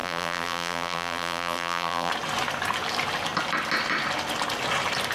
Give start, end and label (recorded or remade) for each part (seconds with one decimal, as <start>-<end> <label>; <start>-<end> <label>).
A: 0.0-2.1 remade; 2.1-5.1 recorded